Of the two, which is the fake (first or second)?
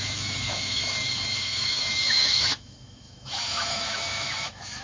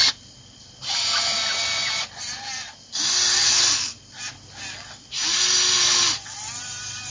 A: first